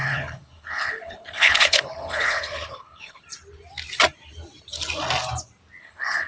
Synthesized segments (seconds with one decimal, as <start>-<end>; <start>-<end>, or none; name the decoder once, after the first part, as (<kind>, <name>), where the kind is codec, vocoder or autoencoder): 0.0-3.2 (codec, HILCodec); 5.8-6.3